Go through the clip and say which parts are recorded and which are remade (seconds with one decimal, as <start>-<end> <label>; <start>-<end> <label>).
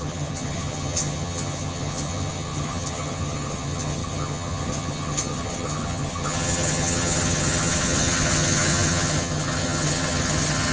0.0-10.7 remade